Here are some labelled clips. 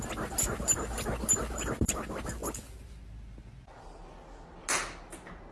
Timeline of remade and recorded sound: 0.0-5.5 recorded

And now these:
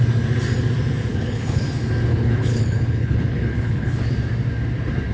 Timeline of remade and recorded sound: 0.0-1.1 recorded; 1.1-1.7 remade; 1.7-2.1 recorded; 2.1-4.1 remade; 4.1-5.1 recorded

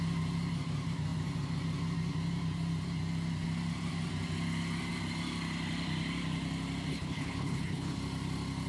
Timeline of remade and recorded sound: 0.0-6.9 recorded; 6.9-8.0 remade; 8.0-8.7 recorded

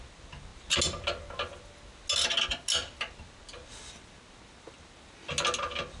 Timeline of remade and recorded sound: 0.0-6.0 recorded

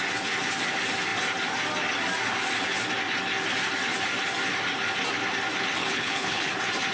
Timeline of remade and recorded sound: 0.0-5.8 recorded; 5.8-6.5 remade; 6.5-6.9 recorded

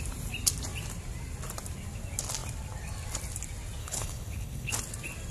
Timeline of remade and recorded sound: 0.0-3.8 recorded; 3.8-4.7 remade; 4.7-5.3 recorded

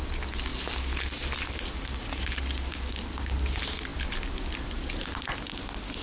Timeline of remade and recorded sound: 0.0-6.0 recorded

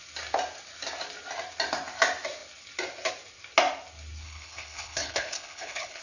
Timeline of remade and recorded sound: 0.0-4.2 recorded; 4.2-6.0 remade